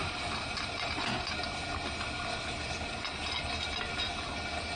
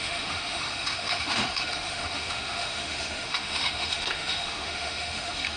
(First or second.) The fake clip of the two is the second